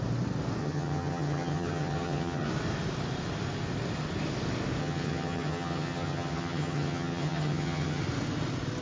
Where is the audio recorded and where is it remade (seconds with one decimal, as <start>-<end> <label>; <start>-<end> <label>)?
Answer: 0.0-0.6 recorded; 0.6-2.5 remade; 2.5-4.8 recorded; 4.8-8.0 remade; 8.0-8.8 recorded